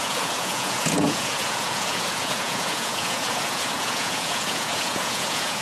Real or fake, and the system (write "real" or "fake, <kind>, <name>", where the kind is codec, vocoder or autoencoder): fake, vocoder, Vocos